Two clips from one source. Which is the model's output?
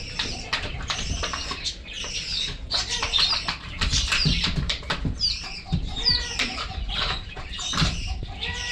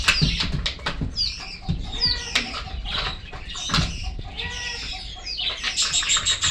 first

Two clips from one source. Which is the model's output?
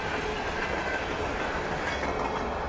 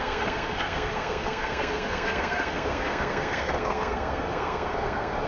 second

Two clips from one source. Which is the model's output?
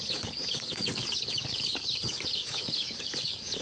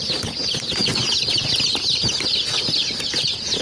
first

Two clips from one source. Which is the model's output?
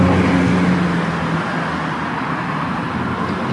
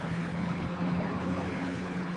second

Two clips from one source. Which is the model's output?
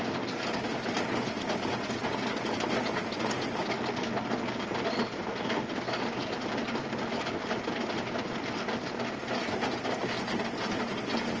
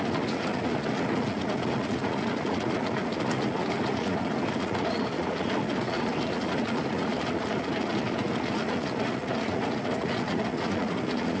second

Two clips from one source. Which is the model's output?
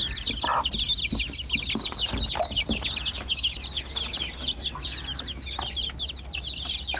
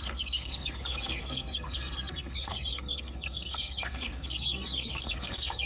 second